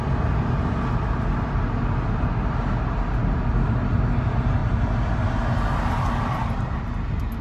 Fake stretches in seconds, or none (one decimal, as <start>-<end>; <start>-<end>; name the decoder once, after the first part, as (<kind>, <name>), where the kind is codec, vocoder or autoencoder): none